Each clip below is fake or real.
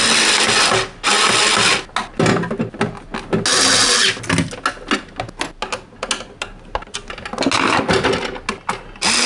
real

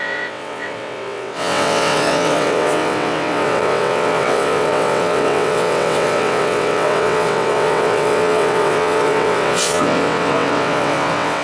fake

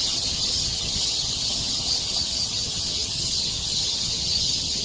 fake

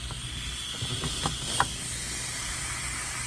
real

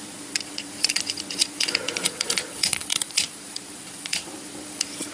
fake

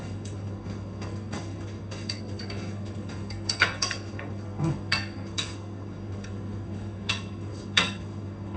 fake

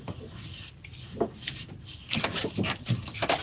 real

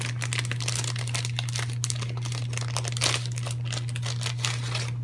real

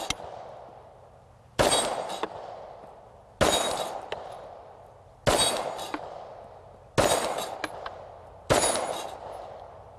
real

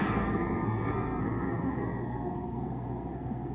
fake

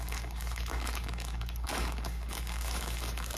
fake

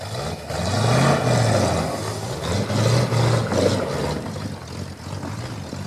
real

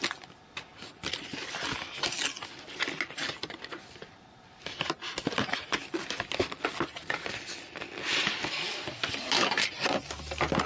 real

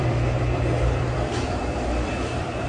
fake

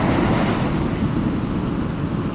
real